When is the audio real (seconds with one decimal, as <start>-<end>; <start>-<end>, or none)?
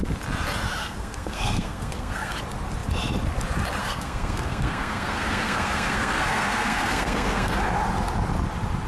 0.0-0.8; 2.4-3.8; 7.6-8.9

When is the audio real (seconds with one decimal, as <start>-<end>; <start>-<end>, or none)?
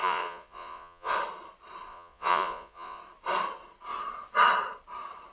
1.1-1.9; 3.0-5.3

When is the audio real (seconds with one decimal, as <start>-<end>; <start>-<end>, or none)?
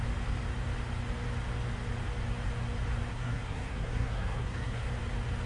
0.0-3.1; 4.9-5.5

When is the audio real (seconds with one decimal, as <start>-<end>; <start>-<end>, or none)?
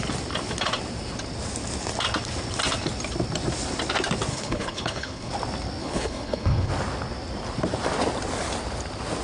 0.0-4.3; 5.3-5.8; 6.7-9.2